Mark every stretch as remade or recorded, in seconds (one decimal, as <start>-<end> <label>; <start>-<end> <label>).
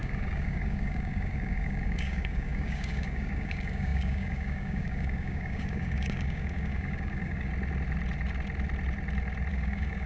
0.0-7.5 remade; 7.5-9.5 recorded; 9.5-10.1 remade